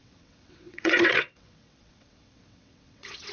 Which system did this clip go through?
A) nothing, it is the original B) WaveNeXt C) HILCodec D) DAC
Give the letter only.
B